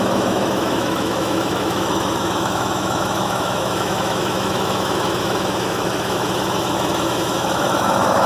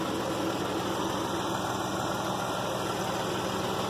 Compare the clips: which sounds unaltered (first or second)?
second